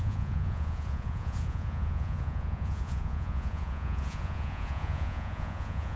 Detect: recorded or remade remade